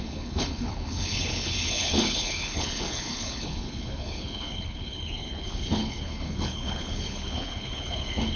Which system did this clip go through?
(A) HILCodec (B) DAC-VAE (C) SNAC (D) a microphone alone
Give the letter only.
A